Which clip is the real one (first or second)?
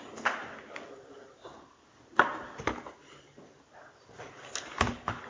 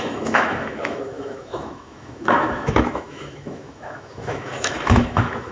first